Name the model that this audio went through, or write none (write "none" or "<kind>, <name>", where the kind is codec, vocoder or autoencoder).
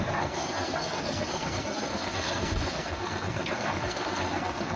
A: codec, SNAC